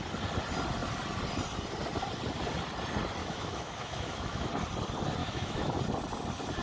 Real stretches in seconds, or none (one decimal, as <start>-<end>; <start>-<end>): 0.0-3.2; 4.5-5.2; 5.8-6.6